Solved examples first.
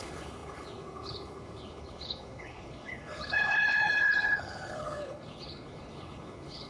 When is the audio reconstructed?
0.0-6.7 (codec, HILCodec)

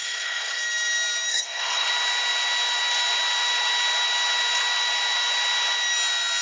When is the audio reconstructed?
0.0-0.6 (codec, HILCodec); 1.3-1.9

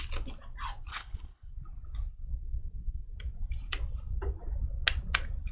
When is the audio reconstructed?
0.9-1.5 (codec, HILCodec)

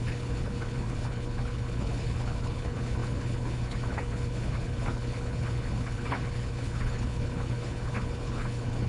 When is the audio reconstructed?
0.0-8.9 (codec, HILCodec)